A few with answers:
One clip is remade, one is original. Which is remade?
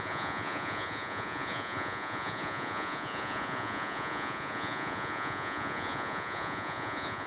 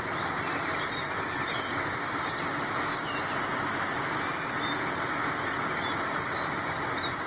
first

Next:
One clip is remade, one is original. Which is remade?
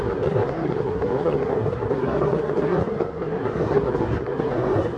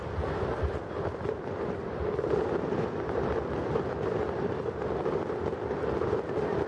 first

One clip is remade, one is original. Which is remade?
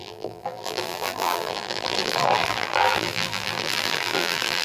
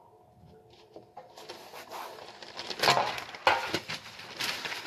first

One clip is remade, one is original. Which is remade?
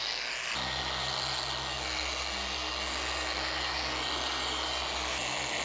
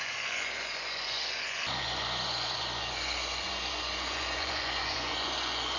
second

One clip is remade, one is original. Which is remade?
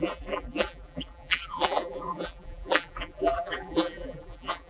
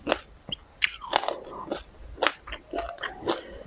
first